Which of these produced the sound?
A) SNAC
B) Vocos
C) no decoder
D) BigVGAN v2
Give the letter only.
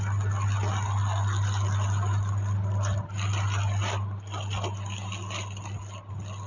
C